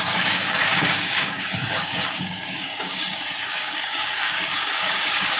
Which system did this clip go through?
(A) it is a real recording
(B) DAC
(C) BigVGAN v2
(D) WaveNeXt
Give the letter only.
B